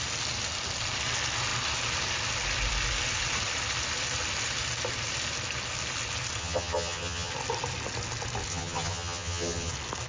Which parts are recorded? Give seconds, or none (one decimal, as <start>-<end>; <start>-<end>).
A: 0.0-6.4; 7.3-8.5; 9.7-10.1